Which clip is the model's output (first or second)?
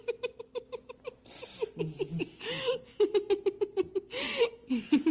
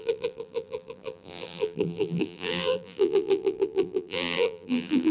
second